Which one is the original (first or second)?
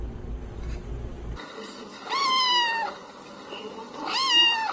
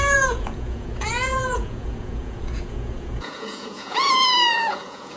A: first